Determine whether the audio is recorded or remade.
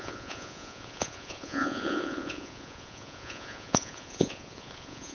remade